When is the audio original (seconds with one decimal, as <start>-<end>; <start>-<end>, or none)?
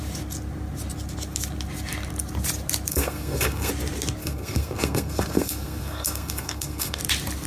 0.0-2.9; 3.7-4.2; 7.0-7.5